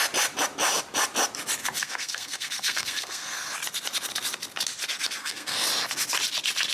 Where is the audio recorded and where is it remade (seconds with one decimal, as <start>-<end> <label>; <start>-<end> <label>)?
0.0-1.6 recorded; 1.6-3.5 remade; 3.5-5.2 recorded; 5.2-5.7 remade; 5.7-6.7 recorded